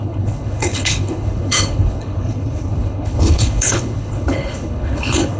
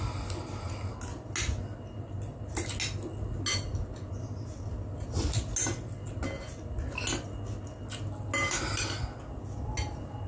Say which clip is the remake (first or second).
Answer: first